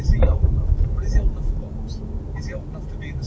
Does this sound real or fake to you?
real